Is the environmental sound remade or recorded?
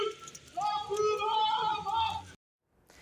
recorded